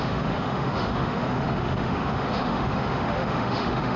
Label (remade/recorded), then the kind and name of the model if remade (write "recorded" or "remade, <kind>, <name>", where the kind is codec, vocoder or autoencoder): remade, autoencoder, DAC-VAE